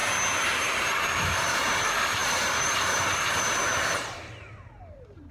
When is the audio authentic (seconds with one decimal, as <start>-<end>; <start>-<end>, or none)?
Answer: 0.0-1.1; 3.6-4.8